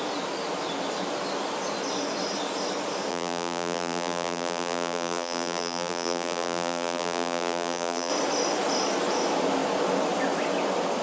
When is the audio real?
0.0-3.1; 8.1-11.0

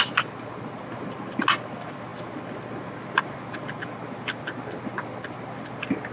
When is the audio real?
0.0-6.1